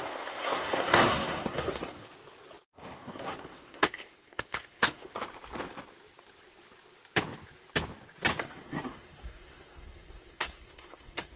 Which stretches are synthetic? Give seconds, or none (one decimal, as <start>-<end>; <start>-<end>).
0.0-2.0; 2.7-5.1; 8.4-11.4